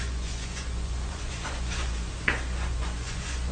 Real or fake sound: fake